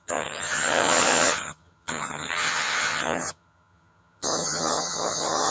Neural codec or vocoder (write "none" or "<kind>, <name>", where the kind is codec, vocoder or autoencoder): vocoder, HiFi-GAN